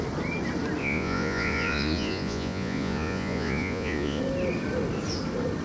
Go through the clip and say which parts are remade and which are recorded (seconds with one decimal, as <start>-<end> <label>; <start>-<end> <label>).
0.0-0.8 recorded; 0.8-4.2 remade; 4.2-5.6 recorded